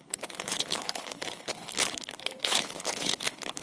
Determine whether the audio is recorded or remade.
remade